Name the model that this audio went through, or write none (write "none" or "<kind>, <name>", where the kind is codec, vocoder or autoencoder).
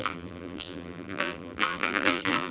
vocoder, BigVGAN v2